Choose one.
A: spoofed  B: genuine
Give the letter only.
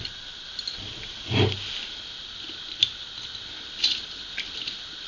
B